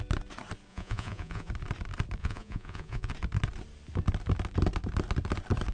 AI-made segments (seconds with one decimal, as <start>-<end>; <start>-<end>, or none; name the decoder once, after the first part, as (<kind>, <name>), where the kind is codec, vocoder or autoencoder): 0.7-1.5 (vocoder, Vocos); 2.2-3.1